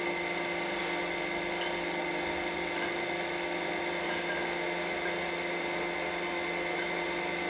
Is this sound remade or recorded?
recorded